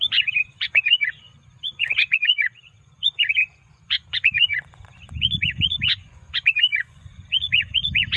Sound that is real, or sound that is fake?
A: fake